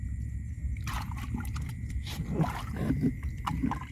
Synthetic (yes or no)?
yes